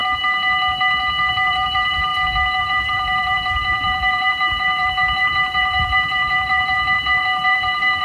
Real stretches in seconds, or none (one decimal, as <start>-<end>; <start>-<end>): 0.0-1.3; 2.1-2.6